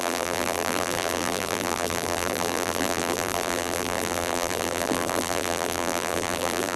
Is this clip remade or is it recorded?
remade